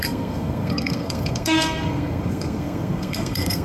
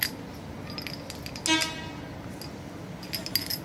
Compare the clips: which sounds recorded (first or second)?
second